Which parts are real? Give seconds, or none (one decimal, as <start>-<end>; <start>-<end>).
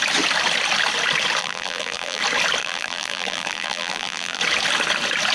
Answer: 0.0-1.4; 2.2-2.6; 4.4-5.3